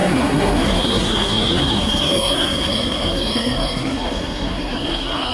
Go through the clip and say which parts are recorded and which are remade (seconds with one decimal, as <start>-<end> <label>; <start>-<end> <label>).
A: 0.0-5.3 remade